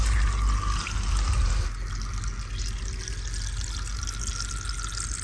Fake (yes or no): no